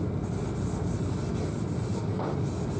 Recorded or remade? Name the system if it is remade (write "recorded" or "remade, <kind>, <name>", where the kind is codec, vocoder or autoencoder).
recorded